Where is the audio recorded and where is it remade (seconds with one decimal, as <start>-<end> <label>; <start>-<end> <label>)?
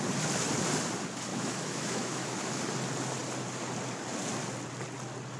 0.0-1.3 recorded; 1.3-2.6 remade; 2.6-5.4 recorded